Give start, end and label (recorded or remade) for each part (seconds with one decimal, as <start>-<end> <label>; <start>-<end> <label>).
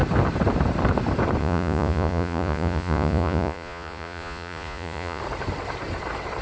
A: 0.0-1.4 recorded; 1.4-5.2 remade; 5.2-6.4 recorded